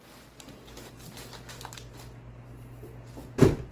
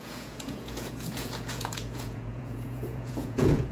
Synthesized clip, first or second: second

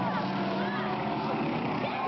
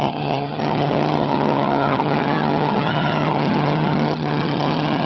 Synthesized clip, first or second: second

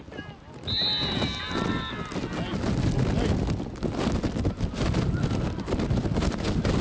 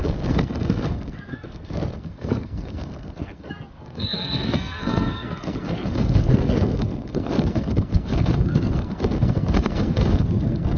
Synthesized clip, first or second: second